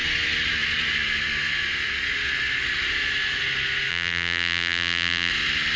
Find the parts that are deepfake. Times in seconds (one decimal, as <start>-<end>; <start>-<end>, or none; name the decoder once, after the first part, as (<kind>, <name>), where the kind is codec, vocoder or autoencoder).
3.9-5.3 (vocoder, BigVGAN v2)